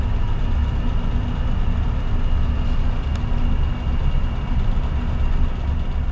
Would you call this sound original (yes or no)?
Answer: yes